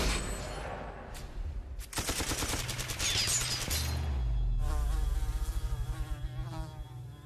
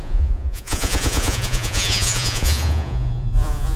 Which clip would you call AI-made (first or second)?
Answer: second